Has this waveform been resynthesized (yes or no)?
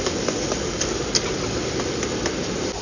no